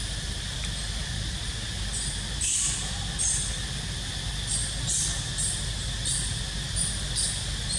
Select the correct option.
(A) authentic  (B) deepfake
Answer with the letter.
B